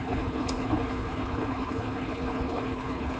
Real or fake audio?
fake